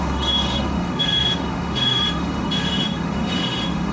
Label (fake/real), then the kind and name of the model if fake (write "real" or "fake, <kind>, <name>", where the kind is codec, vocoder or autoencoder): fake, autoencoder, DAC-VAE